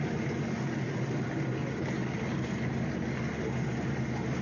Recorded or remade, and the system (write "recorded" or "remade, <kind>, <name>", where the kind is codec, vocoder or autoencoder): recorded